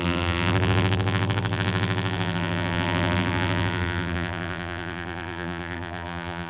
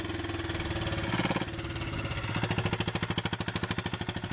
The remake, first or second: first